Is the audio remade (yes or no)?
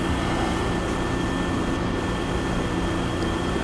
no